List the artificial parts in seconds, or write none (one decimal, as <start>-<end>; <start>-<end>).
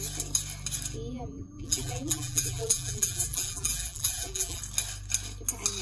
1.1-4.6